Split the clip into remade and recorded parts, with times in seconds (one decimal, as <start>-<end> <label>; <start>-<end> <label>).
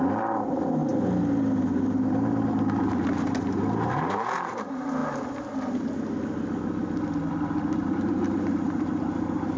0.0-0.8 remade; 0.8-1.4 recorded; 1.4-5.0 remade; 5.0-7.3 recorded; 7.3-9.6 remade